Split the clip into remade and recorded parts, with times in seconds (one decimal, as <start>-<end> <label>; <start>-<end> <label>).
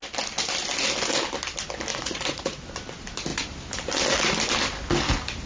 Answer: 0.0-1.9 recorded; 1.9-2.6 remade; 2.6-5.5 recorded